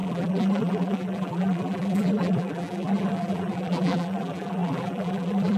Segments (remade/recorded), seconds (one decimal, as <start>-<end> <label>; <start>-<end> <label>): 0.0-5.6 remade